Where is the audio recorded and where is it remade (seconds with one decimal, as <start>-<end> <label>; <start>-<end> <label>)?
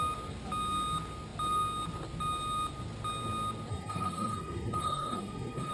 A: 0.0-3.7 recorded; 3.7-5.7 remade